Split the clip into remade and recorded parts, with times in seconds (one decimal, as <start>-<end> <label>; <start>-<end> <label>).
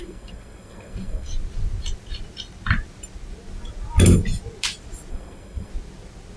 0.0-1.3 remade; 1.3-5.1 recorded; 5.1-5.7 remade; 5.7-6.4 recorded